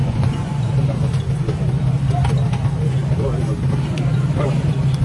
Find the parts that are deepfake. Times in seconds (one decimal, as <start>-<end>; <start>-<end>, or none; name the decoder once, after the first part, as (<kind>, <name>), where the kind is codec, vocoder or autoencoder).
0.0-0.7 (vocoder, Vocos)